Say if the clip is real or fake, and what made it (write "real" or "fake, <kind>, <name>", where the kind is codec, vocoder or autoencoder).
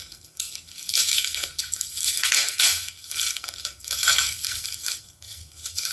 fake, codec, SNAC